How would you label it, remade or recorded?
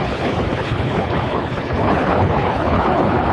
remade